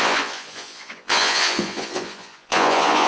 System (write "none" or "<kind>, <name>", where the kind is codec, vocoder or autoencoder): vocoder, Vocos